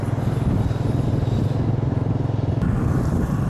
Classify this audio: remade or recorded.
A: recorded